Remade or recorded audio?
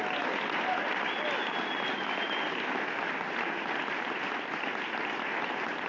recorded